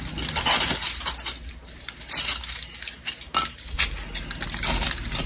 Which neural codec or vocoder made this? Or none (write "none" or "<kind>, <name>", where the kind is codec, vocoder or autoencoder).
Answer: none